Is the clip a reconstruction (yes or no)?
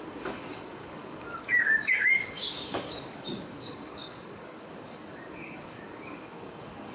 yes